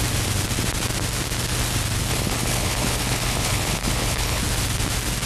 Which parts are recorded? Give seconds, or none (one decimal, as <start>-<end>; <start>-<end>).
0.0-2.1; 4.4-5.3